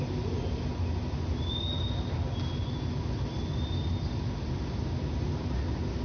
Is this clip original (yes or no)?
yes